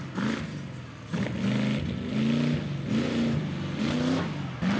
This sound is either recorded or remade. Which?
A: recorded